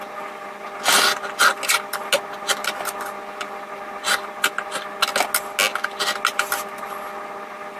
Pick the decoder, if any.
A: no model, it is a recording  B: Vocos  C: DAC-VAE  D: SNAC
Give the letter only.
A